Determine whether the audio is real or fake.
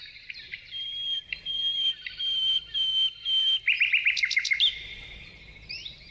fake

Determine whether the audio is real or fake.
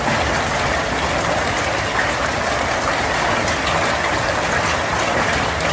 real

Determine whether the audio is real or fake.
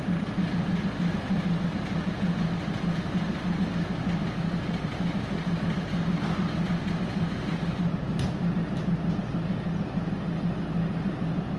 real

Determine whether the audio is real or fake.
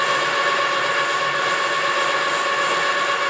real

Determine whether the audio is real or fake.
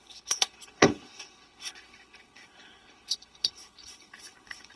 fake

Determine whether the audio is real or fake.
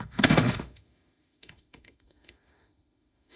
fake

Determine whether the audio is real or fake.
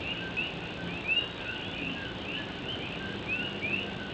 real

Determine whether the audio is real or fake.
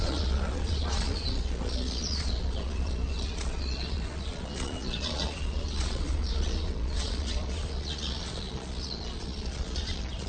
fake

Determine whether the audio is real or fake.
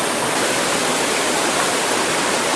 real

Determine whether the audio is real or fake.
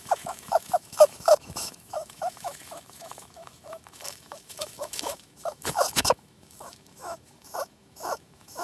fake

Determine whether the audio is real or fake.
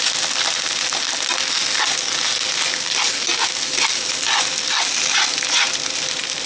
real